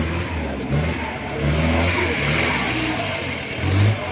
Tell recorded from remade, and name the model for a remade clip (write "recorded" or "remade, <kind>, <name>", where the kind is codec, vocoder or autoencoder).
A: recorded